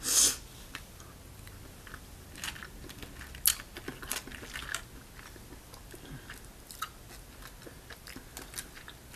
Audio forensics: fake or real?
real